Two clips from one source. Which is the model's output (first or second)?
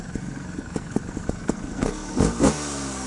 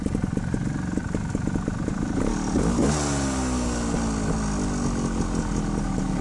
first